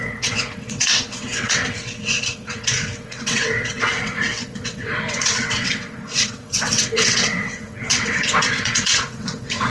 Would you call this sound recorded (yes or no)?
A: no